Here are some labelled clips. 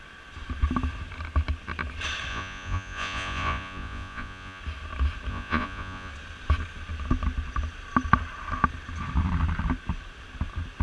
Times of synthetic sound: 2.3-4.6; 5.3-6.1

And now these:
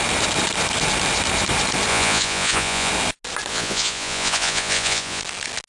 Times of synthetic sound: 1.9-2.9; 3.5-5.2

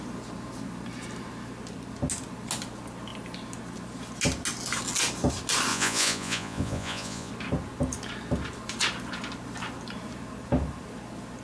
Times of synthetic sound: 5.7-7.3

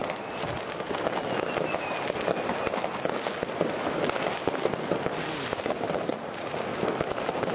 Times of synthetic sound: 6.1-6.6

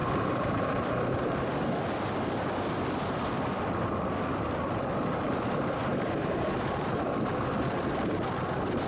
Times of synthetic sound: 0.0-1.5; 5.9-7.5